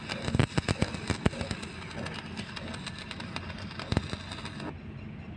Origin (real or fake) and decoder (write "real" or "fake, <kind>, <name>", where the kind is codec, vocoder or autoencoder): real